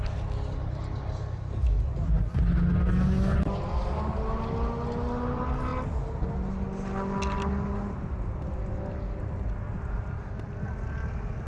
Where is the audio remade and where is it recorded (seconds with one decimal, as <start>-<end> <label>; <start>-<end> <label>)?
0.0-11.5 recorded